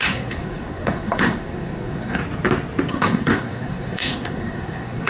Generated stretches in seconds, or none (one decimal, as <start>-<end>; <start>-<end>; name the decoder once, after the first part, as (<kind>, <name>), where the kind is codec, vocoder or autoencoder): 0.0-2.2 (codec, SNAC); 2.9-5.1